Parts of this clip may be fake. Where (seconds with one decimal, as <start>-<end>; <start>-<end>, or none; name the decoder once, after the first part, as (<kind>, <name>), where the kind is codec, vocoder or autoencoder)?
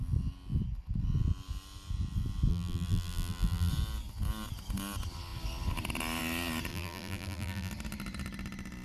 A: 2.5-3.7 (vocoder, BigVGAN v2); 6.7-7.7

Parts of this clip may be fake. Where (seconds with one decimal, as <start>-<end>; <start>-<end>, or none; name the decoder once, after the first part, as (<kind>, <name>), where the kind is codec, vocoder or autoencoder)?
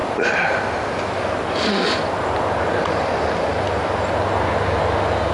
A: none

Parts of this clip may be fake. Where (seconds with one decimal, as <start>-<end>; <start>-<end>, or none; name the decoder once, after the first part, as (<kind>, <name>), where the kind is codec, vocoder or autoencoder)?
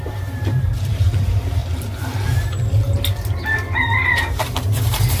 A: 0.0-1.6 (vocoder, BigVGAN v2); 4.1-5.2